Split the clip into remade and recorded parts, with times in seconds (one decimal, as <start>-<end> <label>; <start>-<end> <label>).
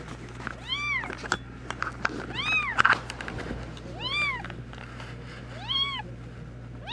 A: 0.0-6.9 recorded